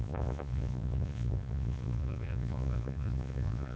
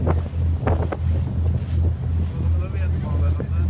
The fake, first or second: first